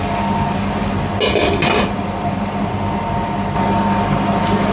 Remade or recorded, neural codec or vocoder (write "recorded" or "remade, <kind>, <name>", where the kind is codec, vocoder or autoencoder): recorded